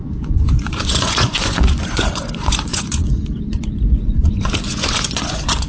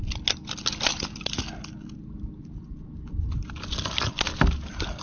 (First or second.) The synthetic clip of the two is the first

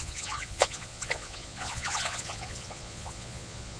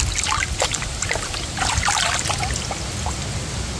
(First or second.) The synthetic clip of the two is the first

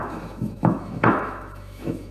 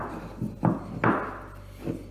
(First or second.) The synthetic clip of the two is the first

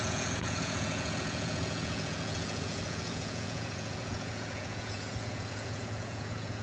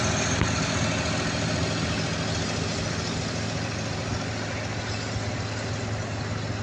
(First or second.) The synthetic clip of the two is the first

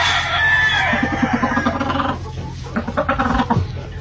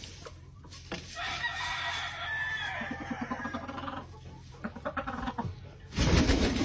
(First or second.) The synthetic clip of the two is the second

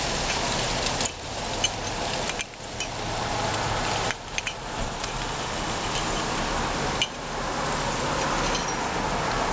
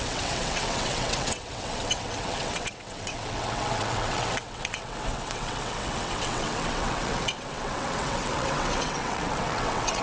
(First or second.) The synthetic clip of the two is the second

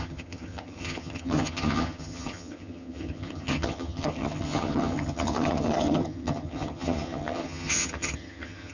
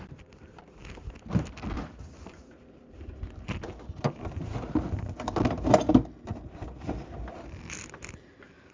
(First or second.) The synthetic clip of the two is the first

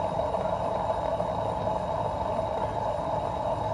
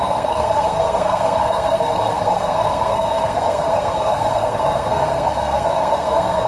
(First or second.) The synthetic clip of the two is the second